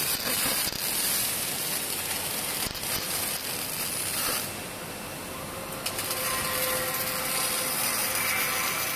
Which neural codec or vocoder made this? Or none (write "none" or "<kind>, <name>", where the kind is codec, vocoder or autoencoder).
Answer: none